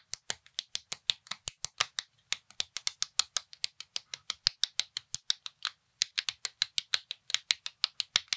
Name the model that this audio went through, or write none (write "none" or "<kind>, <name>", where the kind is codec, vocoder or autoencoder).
none